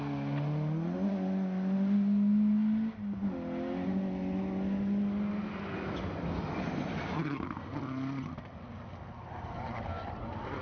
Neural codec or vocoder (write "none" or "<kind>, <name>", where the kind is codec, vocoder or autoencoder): none